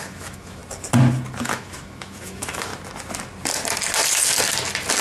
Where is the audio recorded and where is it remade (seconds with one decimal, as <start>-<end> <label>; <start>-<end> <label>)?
0.0-0.6 remade; 0.6-1.4 recorded; 1.4-2.7 remade; 2.7-5.0 recorded